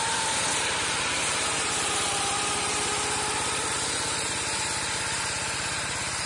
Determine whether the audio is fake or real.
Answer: real